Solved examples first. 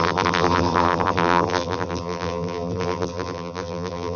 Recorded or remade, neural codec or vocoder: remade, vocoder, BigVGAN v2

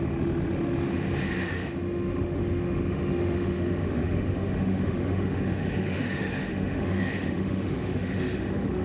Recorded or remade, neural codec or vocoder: remade, autoencoder, DAC-VAE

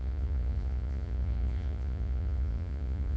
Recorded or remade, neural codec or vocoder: remade, vocoder, Vocos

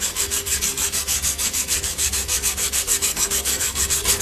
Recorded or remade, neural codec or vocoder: remade, codec, SNAC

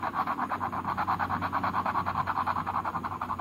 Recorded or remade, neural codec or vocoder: recorded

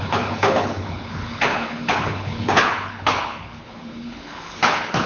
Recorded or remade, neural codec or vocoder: remade, codec, HILCodec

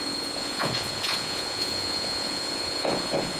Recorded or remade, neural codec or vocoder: remade, vocoder, Vocos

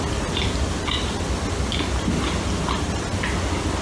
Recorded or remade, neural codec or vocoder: recorded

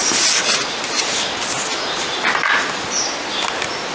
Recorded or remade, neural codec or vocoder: recorded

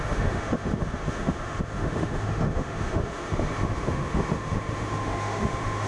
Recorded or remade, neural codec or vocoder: remade, autoencoder, DAC-VAE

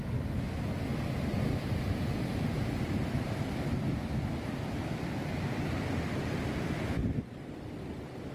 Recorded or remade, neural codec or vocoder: recorded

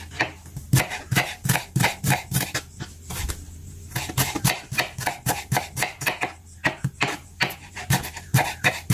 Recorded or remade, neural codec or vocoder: remade, vocoder, BigVGAN v2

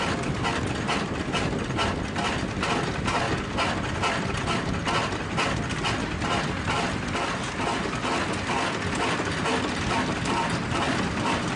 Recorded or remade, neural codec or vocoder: recorded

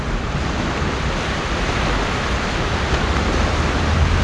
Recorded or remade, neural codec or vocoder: recorded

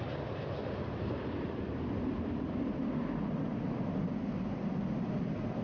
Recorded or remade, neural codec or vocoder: recorded